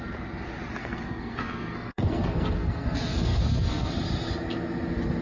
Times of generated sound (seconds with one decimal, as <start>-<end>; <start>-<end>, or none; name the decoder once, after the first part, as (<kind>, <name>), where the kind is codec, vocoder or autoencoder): 0.8-3.9 (codec, SNAC)

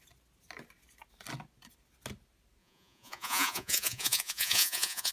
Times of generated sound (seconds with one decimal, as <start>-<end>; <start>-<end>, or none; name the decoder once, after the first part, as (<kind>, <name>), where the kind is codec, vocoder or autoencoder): 2.6-5.1 (vocoder, Vocos)